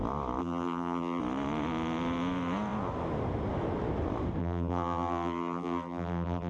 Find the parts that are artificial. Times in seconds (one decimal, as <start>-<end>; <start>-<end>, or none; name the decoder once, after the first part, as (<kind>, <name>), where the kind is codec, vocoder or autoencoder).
0.4-1.2 (vocoder, BigVGAN v2); 4.4-6.5